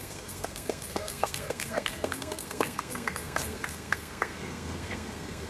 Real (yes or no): no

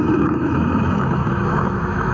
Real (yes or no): no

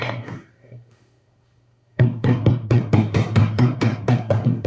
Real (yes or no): no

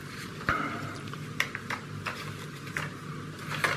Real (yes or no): yes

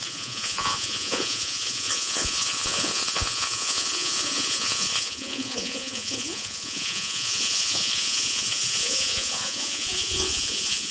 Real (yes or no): no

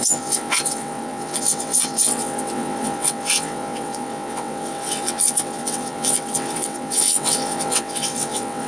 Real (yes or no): no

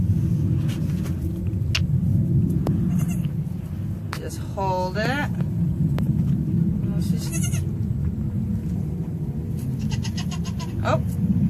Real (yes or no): yes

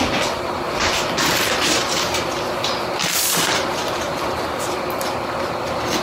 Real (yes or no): yes